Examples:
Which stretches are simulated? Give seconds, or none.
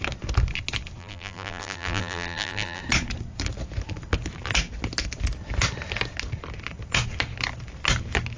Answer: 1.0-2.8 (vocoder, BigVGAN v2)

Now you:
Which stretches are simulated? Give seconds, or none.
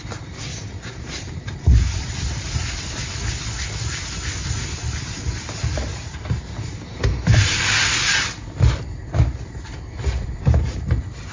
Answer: 0.5-3.1 (vocoder, BigVGAN v2); 5.9-7.6